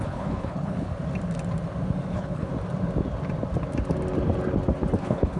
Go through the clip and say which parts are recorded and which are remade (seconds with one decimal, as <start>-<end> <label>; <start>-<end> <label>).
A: 0.0-0.9 remade; 0.9-2.1 recorded; 2.1-2.5 remade; 2.5-5.0 recorded; 5.0-5.4 remade